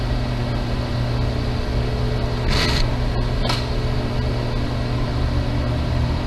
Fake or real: real